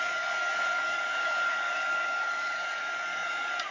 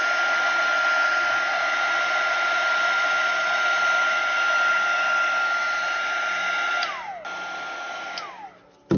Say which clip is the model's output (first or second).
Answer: first